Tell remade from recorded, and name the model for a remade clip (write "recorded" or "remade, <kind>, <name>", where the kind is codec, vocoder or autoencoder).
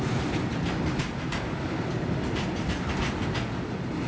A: recorded